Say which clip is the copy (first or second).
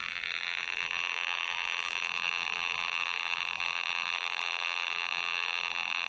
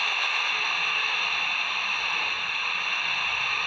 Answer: first